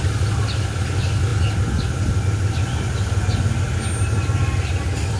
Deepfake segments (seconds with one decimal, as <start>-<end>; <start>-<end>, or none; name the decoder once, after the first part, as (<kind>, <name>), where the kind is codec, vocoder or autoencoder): none